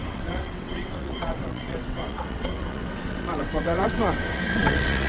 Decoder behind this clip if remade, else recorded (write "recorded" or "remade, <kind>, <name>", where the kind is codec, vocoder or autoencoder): remade, vocoder, WaveNeXt